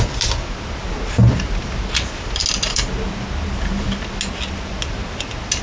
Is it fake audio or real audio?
real